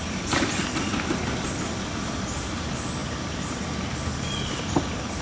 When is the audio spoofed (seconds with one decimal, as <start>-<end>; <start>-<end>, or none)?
none